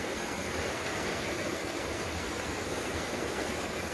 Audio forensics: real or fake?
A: fake